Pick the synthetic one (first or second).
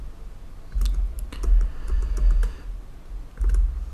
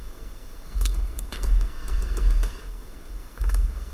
second